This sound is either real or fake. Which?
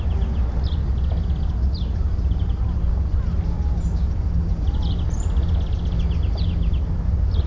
real